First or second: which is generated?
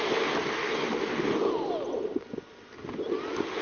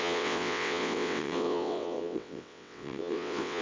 second